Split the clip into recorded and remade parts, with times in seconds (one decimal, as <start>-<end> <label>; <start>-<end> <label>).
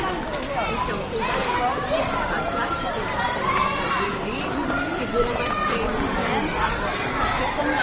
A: 0.0-1.7 recorded; 1.7-6.3 remade; 6.3-7.8 recorded